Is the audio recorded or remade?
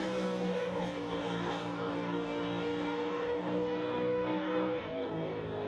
remade